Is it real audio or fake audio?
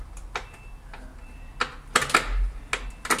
real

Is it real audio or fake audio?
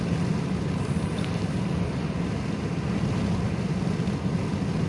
real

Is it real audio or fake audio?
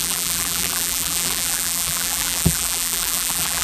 fake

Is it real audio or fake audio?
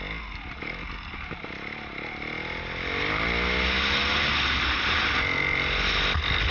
real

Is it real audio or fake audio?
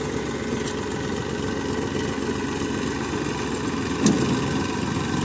real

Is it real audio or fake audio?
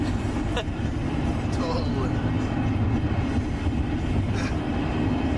real